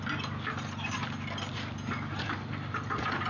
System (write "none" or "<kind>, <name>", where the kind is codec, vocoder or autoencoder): none